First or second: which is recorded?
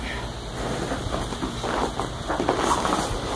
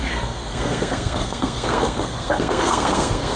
first